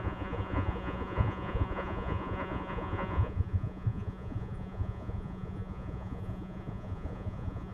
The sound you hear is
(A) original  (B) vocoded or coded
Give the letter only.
B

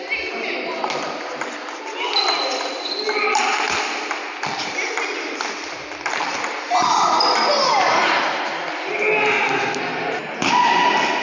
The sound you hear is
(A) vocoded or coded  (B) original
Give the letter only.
B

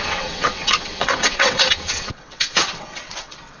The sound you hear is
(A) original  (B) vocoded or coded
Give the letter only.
B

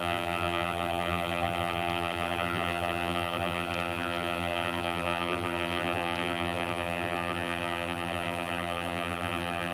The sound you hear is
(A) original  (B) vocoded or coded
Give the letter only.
B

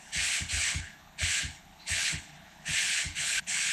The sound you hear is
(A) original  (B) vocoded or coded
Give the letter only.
B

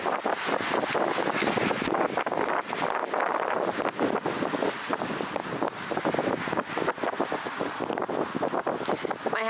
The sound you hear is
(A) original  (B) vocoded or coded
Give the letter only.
A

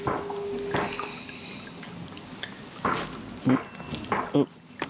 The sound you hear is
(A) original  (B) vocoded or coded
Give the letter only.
A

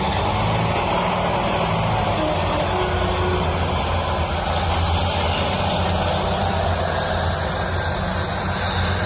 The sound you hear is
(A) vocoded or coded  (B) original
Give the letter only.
B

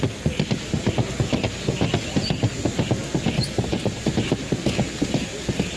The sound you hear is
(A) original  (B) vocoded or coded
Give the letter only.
A